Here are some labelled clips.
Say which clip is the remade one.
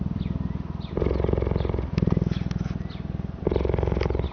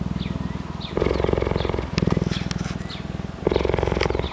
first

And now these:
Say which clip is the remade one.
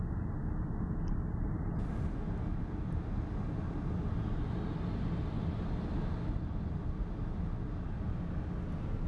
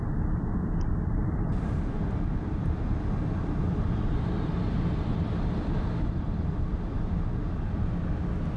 second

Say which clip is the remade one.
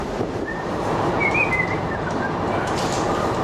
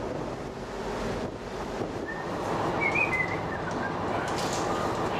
first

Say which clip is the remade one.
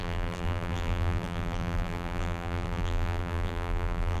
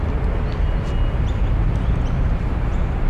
first